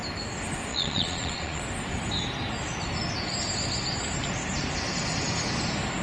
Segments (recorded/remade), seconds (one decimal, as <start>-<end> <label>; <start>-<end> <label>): 0.0-0.7 recorded; 0.7-1.6 remade; 1.6-6.0 recorded